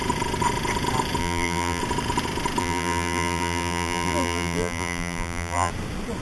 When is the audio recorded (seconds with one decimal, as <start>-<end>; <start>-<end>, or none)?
0.0-1.2; 1.8-2.6; 5.7-6.2

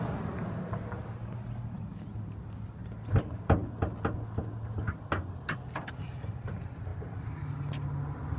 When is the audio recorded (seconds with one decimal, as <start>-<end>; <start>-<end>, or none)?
0.0-8.4